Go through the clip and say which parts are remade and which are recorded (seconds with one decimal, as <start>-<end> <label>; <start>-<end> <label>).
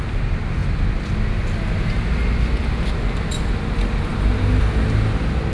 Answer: 0.0-5.5 recorded